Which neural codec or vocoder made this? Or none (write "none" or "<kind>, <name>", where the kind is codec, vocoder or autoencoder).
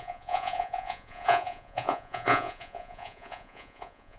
vocoder, Vocos